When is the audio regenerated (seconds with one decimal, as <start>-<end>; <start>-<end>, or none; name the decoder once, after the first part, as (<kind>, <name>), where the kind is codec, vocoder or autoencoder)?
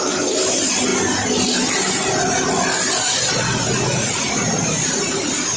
none